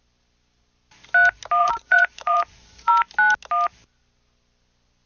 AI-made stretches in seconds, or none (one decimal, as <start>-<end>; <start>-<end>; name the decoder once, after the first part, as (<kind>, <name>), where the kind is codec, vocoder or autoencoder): 1.6-2.9 (vocoder, Vocos)